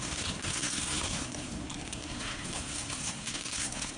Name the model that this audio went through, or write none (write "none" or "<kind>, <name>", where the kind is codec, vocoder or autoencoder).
codec, SNAC